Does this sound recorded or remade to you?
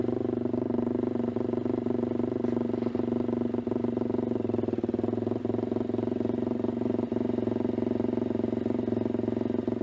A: recorded